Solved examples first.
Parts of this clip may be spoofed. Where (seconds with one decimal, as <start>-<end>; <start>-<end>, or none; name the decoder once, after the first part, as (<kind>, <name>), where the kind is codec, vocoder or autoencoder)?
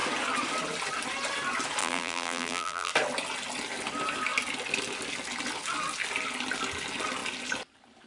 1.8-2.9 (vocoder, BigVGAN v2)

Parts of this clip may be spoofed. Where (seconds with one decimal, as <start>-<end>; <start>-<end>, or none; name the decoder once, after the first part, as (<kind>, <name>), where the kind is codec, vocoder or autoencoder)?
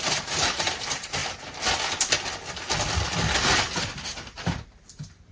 0.0-1.2 (vocoder, BigVGAN v2); 3.8-5.3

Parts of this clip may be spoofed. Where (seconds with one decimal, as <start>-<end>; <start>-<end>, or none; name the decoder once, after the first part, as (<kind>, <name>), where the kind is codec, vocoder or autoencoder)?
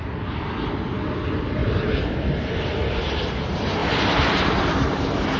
1.6-2.4 (vocoder, BigVGAN v2)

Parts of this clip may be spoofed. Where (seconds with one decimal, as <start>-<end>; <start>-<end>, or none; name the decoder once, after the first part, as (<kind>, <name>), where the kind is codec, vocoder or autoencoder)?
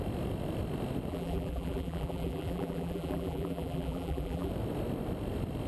1.1-4.5 (vocoder, BigVGAN v2)